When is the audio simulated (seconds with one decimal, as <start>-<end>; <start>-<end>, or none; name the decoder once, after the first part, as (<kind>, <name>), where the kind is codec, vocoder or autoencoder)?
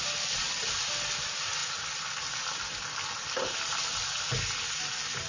none